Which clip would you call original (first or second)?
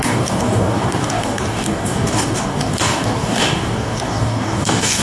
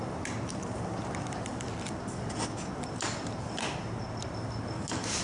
second